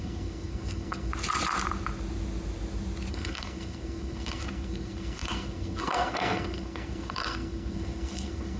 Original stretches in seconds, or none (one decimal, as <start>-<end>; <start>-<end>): 1.1-3.1